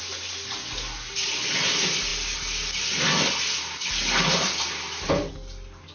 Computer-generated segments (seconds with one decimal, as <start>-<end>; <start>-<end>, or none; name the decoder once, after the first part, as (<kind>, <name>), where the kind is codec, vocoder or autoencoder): none